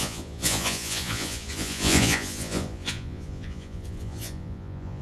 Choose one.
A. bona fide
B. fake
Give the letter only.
B